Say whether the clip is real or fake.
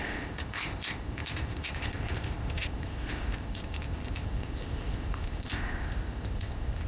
fake